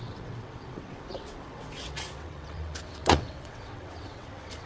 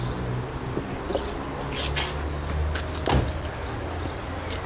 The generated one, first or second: first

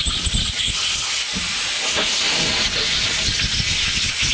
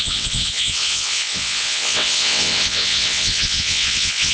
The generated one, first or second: second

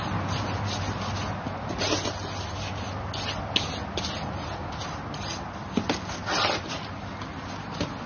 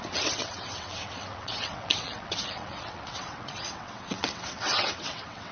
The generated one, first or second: second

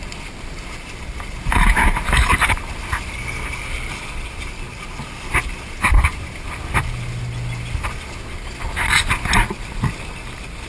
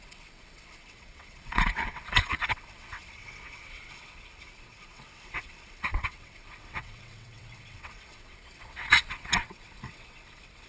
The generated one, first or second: second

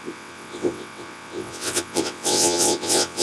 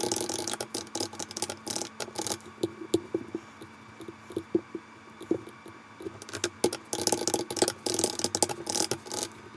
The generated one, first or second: first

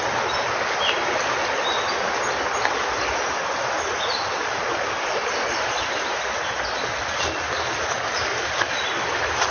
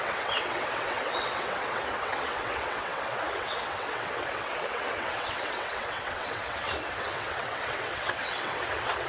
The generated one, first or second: second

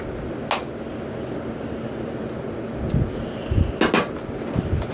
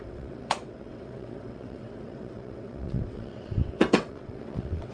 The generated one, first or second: second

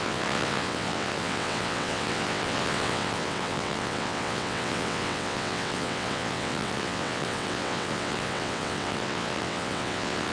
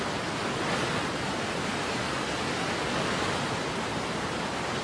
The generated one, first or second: first